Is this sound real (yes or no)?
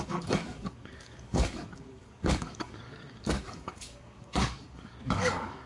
no